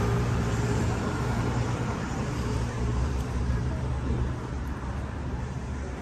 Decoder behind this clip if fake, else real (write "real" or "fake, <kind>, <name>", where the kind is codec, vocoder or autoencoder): fake, vocoder, BigVGAN v2